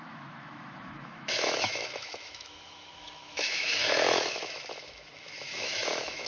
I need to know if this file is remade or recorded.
remade